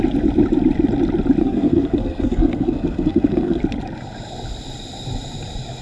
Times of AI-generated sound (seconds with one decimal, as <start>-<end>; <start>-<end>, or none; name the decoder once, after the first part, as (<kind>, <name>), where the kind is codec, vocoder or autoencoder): 1.4-3.6 (codec, SNAC)